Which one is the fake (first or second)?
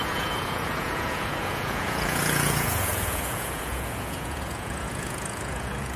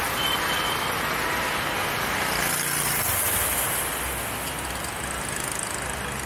first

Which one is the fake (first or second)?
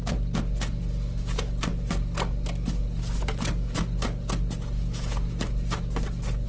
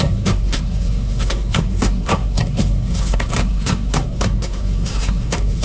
second